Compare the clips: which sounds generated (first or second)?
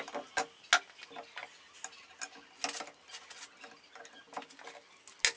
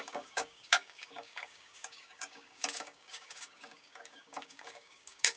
second